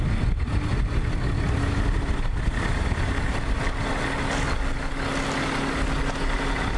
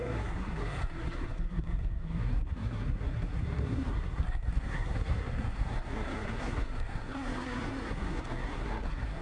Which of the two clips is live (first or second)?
first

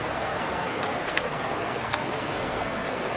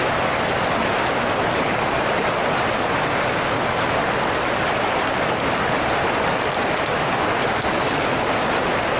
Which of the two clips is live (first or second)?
second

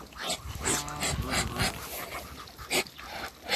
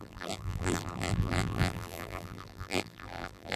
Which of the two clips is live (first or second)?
first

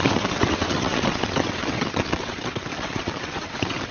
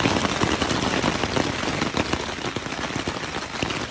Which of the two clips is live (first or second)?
second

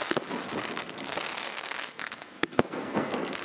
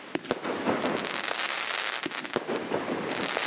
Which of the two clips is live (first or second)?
second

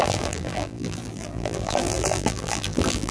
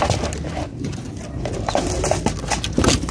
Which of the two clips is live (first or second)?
second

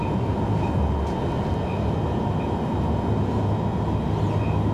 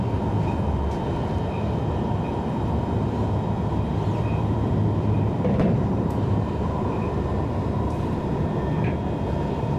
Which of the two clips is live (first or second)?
first